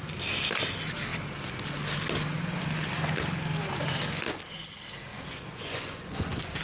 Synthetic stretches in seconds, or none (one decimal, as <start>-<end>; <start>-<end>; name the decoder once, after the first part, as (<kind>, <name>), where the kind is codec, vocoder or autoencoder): 5.1-6.6 (vocoder, Vocos)